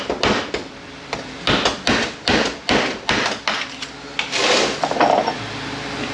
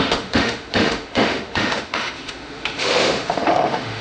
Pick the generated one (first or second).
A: second